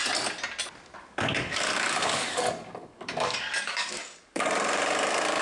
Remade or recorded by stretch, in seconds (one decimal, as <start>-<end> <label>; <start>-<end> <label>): 0.0-1.1 recorded; 1.1-5.4 remade